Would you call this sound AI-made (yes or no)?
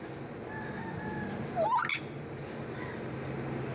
no